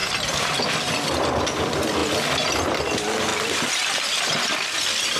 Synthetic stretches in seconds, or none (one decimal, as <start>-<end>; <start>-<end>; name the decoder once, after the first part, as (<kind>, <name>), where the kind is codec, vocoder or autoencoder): 0.8-2.0 (vocoder, BigVGAN v2); 2.7-3.3; 4.0-5.2